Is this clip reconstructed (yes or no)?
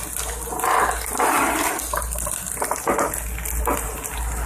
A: no